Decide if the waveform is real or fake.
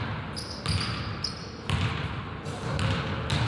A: real